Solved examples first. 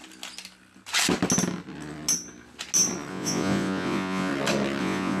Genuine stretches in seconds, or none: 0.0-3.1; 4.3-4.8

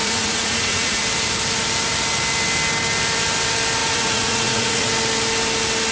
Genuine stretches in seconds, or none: 1.0-3.8; 4.9-5.9

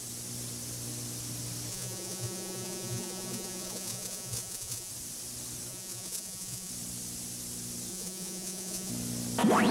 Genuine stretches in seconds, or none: 0.0-1.7; 4.9-5.7; 6.7-7.9; 8.9-9.7

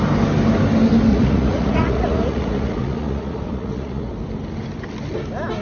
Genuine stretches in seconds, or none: 0.0-1.1; 4.1-5.6

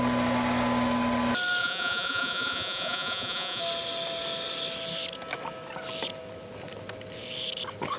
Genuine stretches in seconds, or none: 0.0-1.6; 3.6-8.0

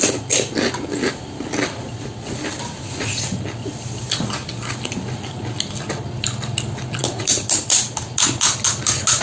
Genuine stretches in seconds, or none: 0.0-9.2

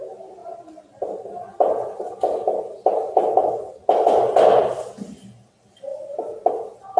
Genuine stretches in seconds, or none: 0.0-7.0